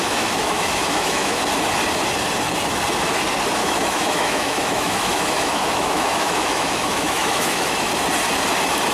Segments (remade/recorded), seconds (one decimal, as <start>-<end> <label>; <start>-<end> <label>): 0.0-1.4 remade; 1.4-3.6 recorded; 3.6-7.9 remade; 7.9-8.9 recorded